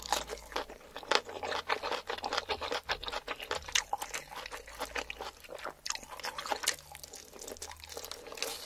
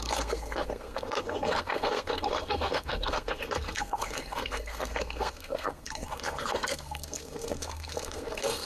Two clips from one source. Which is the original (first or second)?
first